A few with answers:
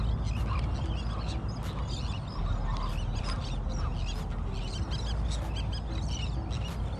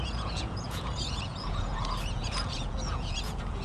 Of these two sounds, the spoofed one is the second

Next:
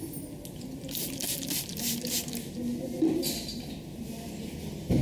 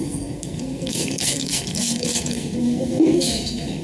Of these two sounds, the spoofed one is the second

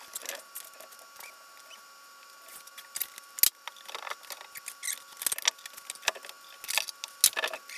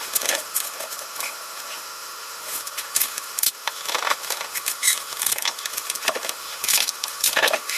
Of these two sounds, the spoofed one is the second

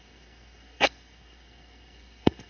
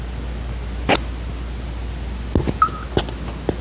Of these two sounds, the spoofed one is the first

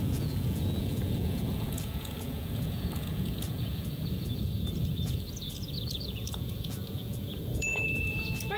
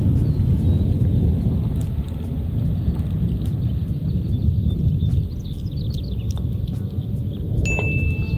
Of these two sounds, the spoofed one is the first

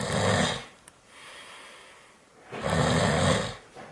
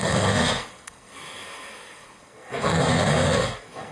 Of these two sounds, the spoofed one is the second